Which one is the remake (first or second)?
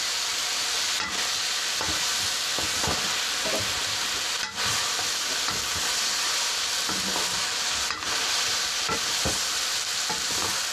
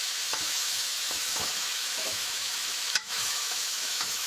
second